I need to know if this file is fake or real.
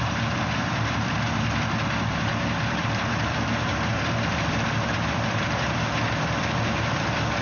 fake